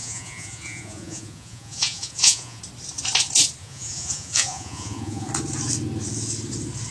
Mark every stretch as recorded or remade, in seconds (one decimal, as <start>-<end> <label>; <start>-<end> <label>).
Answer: 0.0-2.6 remade; 2.6-3.6 recorded; 3.6-5.3 remade; 5.3-6.9 recorded

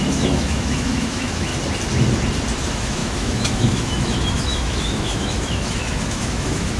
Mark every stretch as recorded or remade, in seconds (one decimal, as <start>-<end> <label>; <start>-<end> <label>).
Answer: 0.0-1.5 remade; 1.5-2.6 recorded; 2.6-6.8 remade